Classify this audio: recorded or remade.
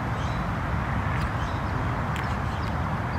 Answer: recorded